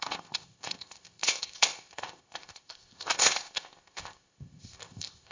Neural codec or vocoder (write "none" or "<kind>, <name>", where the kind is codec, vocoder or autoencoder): codec, ZipCodec